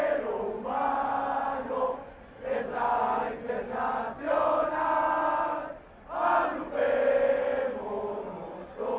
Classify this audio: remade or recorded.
recorded